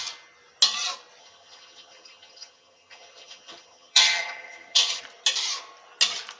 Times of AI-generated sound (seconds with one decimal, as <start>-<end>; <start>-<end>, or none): 1.2-5.0